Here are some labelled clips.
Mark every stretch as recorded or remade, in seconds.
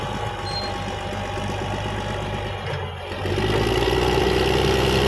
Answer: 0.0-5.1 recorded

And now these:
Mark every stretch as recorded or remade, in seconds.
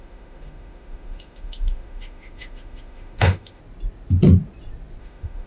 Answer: 0.0-3.6 remade; 3.6-5.0 recorded; 5.0-5.5 remade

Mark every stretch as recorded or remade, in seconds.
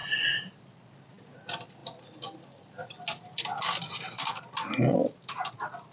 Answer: 0.0-5.9 recorded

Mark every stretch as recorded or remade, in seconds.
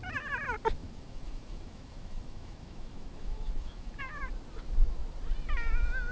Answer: 0.0-0.8 recorded; 0.8-4.0 remade; 4.0-6.1 recorded